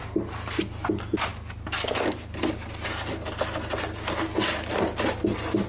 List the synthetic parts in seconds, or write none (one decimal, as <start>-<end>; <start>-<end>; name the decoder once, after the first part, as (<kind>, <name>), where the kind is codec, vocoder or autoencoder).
none